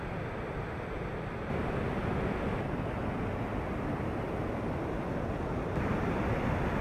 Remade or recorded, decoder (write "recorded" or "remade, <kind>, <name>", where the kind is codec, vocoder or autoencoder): recorded